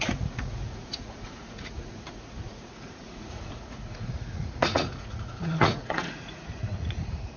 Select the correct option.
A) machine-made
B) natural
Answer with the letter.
A